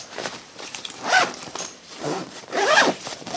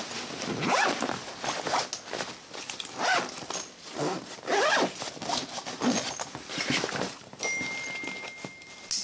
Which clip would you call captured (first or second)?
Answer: second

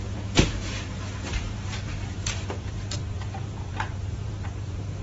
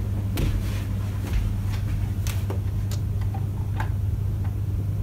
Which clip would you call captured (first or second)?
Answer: second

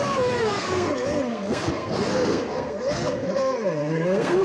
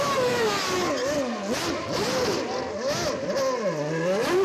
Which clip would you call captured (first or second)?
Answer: second